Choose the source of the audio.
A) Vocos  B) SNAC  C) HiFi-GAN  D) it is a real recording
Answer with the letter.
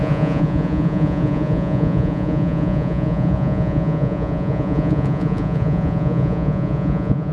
A